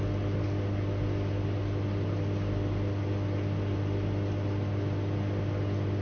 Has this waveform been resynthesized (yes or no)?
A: no